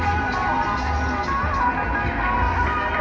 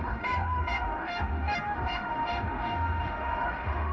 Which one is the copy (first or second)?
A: second